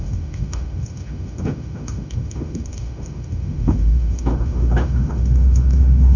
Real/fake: fake